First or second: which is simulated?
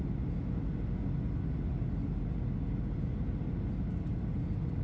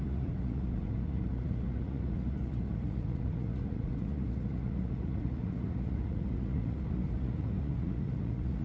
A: second